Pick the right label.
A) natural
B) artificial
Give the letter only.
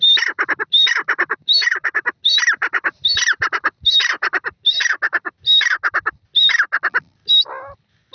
A